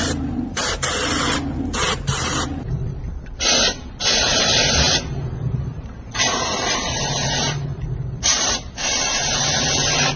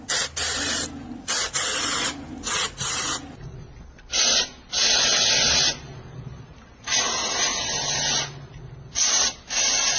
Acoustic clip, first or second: second